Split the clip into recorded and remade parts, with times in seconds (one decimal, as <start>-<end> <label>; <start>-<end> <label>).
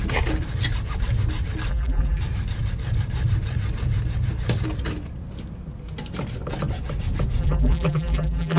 0.0-1.7 recorded; 1.7-2.2 remade; 2.2-7.4 recorded; 7.4-8.6 remade